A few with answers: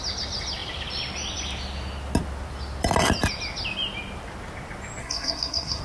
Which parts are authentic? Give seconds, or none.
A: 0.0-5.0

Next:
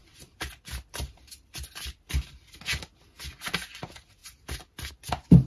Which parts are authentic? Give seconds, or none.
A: 0.0-5.5

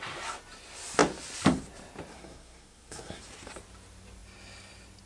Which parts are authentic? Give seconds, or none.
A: 0.0-2.1; 3.2-5.1

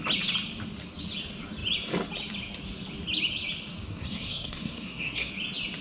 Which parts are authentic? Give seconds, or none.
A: 0.0-3.9; 5.3-5.8